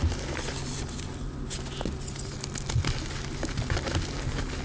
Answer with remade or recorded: recorded